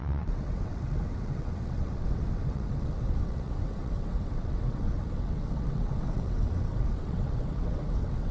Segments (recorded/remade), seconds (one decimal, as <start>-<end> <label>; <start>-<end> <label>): 0.0-8.3 remade